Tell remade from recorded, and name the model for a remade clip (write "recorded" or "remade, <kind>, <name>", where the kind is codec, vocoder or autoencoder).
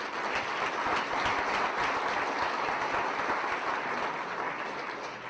recorded